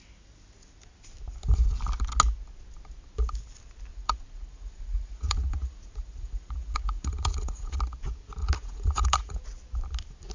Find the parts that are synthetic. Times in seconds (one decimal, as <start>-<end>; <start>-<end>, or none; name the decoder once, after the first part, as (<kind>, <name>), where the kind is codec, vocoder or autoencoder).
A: 3.9-7.8 (vocoder, Vocos); 8.4-9.4